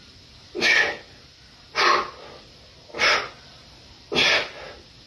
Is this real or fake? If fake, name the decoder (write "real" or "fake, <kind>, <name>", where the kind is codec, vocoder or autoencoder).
real